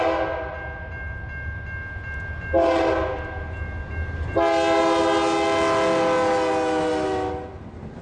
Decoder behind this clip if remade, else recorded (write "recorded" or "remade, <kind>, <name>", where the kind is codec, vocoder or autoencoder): recorded